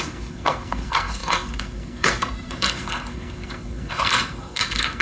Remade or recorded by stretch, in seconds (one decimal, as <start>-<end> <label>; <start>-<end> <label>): 0.0-5.0 remade